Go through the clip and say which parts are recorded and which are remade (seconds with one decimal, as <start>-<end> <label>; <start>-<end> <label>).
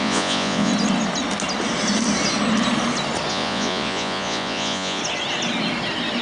0.0-0.7 remade; 0.7-3.3 recorded; 3.3-5.0 remade; 5.0-6.2 recorded